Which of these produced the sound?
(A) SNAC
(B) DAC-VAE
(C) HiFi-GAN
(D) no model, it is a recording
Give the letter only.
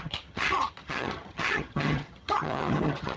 C